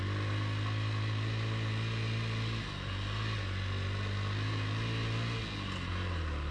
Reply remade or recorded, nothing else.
recorded